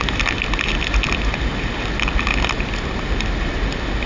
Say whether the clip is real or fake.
real